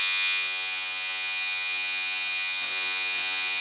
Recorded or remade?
remade